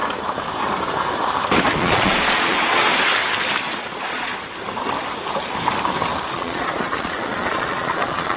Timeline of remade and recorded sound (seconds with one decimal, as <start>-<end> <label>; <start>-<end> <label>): 0.0-1.7 recorded; 1.7-2.9 remade; 2.9-3.7 recorded; 3.7-4.3 remade; 4.3-6.3 recorded; 6.3-8.4 remade